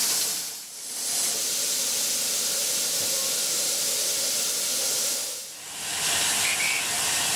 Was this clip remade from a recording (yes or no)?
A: no